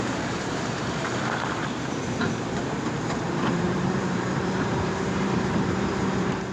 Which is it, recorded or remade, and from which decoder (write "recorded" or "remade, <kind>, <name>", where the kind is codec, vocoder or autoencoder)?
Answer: remade, vocoder, BigVGAN v2